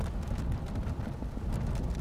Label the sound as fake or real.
real